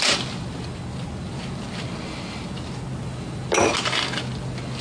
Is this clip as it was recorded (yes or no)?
yes